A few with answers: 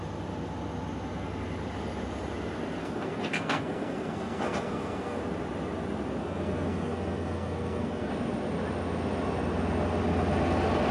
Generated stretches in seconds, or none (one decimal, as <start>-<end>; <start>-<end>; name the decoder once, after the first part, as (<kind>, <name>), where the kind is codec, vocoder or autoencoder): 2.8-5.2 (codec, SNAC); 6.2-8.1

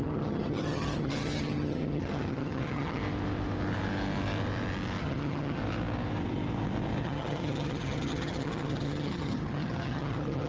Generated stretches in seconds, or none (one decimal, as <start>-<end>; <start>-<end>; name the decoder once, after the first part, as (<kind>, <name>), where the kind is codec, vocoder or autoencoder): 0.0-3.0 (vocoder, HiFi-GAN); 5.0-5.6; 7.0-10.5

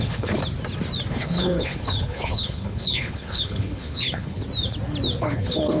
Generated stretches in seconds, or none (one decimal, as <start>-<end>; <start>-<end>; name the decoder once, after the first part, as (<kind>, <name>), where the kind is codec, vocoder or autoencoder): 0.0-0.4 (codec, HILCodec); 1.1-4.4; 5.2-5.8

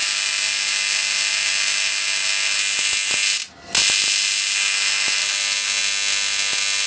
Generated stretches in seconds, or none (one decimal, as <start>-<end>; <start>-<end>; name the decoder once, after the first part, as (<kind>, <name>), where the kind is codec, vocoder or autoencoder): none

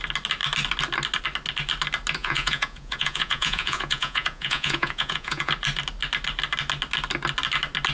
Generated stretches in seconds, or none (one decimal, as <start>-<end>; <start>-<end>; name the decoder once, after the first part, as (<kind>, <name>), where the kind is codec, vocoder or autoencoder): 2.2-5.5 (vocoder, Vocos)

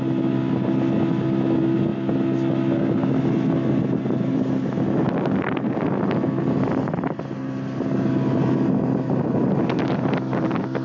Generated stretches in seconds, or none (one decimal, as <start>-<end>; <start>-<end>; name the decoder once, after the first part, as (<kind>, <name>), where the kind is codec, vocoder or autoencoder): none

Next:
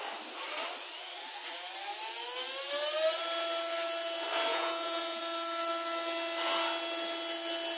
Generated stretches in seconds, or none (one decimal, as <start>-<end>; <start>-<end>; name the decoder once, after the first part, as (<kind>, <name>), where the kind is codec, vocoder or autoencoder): 4.5-5.2 (vocoder, Vocos)

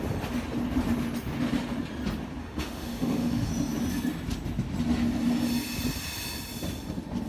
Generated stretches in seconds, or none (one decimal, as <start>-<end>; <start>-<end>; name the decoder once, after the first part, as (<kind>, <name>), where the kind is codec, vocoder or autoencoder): 2.4-3.5 (autoencoder, DAC-VAE)